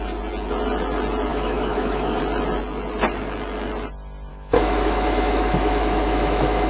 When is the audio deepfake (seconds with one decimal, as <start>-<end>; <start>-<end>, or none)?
1.3-2.2; 4.3-6.7